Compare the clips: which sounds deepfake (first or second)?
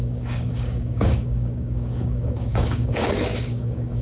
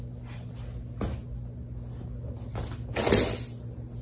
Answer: first